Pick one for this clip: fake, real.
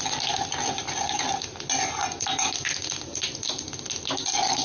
real